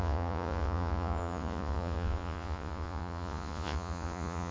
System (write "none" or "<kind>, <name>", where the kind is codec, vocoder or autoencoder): vocoder, Vocos